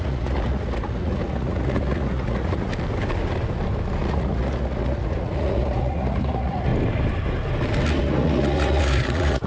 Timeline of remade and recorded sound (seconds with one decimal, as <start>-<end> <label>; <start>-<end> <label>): 0.0-2.7 remade; 2.7-4.1 recorded; 4.1-6.7 remade; 6.7-8.0 recorded; 8.0-9.5 remade

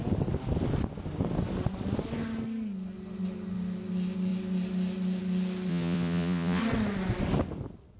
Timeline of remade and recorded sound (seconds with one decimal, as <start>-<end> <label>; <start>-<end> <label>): 0.0-5.7 recorded; 5.7-6.6 remade; 6.6-8.0 recorded

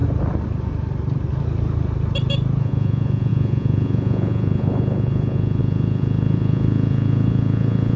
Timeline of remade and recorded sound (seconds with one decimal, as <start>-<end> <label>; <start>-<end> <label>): 0.0-2.6 recorded; 2.6-8.0 remade